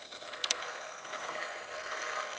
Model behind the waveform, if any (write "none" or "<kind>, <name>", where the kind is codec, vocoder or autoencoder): codec, SNAC